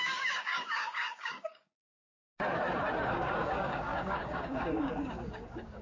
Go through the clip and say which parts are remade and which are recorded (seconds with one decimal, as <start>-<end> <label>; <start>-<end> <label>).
0.0-1.8 remade; 1.8-3.1 recorded; 3.1-5.8 remade

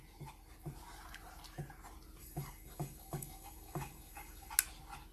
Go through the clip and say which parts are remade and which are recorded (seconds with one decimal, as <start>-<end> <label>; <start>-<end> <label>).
0.0-2.2 recorded; 2.2-4.5 remade; 4.5-5.1 recorded